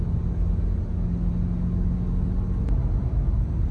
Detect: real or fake real